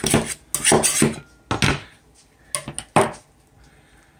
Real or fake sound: real